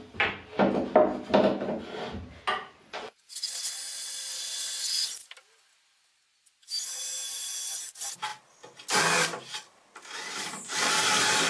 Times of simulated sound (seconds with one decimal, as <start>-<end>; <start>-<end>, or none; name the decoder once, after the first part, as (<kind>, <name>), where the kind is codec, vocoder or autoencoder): 2.8-3.7 (vocoder, WaveNeXt); 4.3-5.1